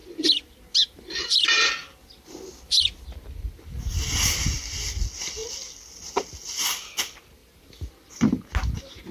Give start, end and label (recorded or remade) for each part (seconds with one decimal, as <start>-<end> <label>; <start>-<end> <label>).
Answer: 0.0-7.4 recorded; 7.4-8.1 remade; 8.1-9.1 recorded